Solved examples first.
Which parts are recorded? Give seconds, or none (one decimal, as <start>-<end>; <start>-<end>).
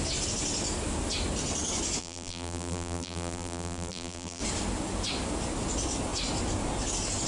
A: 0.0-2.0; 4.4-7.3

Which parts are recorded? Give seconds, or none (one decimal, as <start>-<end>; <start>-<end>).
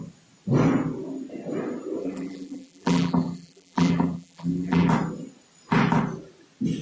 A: 0.0-2.0; 4.9-6.8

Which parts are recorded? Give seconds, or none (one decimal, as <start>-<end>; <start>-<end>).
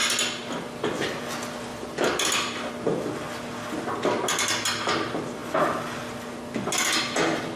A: 0.0-1.7; 2.7-7.6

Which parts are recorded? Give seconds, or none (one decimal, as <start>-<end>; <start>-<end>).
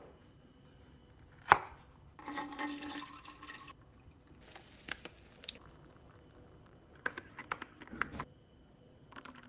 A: 1.0-1.7; 2.5-6.6; 7.4-7.9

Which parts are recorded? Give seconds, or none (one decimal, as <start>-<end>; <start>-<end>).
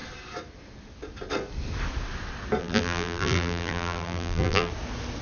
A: 0.0-2.6; 4.7-5.2